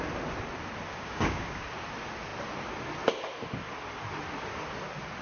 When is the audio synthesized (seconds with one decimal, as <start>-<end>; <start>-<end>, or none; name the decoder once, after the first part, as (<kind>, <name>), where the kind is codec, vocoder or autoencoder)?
0.9-1.6 (codec, DAC)